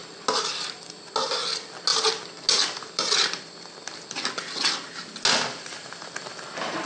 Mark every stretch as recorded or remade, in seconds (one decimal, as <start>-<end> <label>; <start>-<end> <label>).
0.0-6.9 recorded